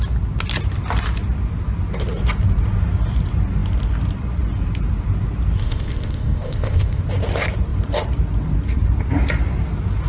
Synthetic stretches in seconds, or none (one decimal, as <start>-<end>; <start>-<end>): 5.6-7.0

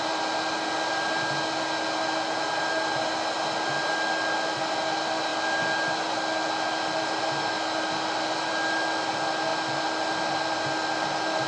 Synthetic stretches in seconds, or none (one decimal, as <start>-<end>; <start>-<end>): none